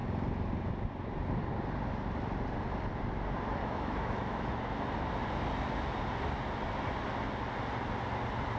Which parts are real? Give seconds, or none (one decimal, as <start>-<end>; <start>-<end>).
0.0-3.6; 4.5-8.6